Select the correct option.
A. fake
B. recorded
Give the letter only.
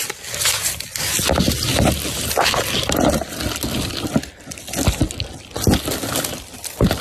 B